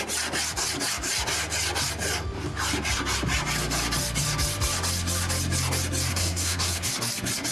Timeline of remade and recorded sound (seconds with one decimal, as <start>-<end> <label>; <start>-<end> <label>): 0.0-6.1 recorded; 6.1-6.9 remade; 6.9-7.5 recorded